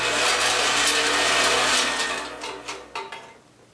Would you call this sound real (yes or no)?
yes